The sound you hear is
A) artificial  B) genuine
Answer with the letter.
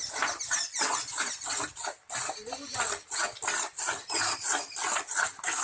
B